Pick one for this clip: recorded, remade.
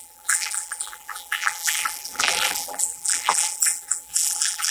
remade